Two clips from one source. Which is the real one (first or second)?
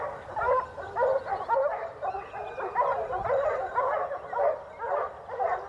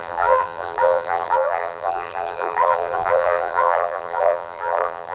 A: first